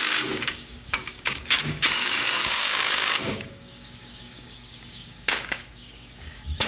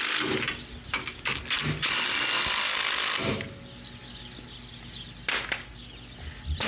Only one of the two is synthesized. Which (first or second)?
first